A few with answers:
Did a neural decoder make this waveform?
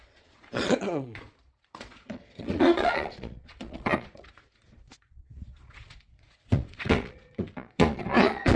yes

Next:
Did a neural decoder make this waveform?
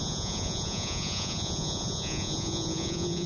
yes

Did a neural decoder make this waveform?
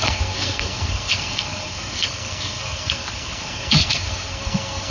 yes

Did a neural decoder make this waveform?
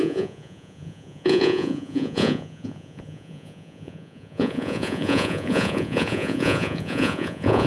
yes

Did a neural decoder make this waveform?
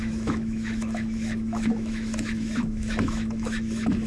yes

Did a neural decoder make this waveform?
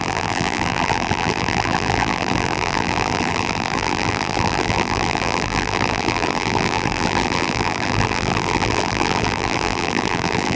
yes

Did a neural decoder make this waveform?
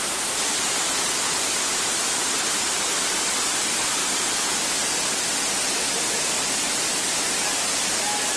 no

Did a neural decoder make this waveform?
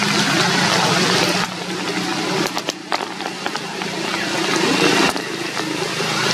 no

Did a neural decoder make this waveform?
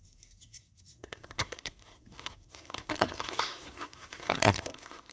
yes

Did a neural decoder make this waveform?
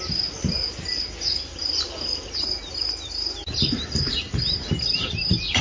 no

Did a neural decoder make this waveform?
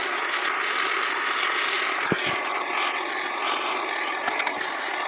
no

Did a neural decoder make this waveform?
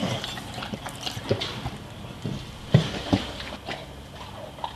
no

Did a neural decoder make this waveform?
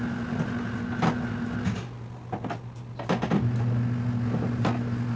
no